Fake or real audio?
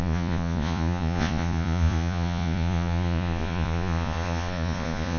fake